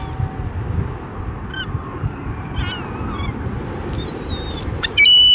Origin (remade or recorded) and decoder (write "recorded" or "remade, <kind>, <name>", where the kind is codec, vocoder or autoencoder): recorded